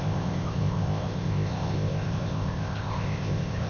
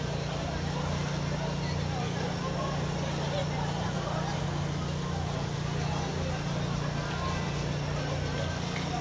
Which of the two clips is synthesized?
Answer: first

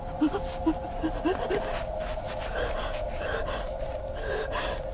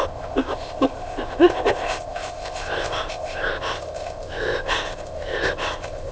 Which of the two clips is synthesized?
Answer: second